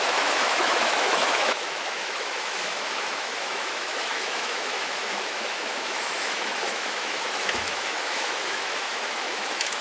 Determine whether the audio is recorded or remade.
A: remade